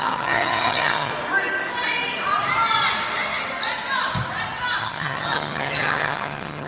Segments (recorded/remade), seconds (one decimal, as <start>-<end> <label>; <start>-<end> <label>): 0.0-1.1 remade; 1.1-4.8 recorded; 4.8-6.7 remade